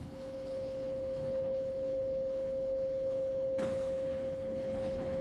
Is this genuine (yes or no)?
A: no